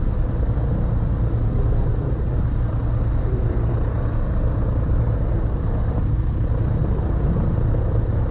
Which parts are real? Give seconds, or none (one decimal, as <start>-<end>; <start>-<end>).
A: 0.0-8.3